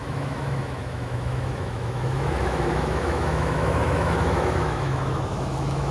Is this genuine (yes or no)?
no